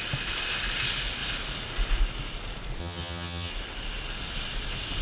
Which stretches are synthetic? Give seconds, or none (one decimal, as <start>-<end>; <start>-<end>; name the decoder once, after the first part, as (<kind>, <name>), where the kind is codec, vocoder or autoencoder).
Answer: 2.8-3.5 (vocoder, HiFi-GAN)